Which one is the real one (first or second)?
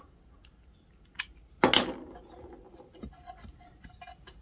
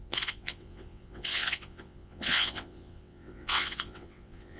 first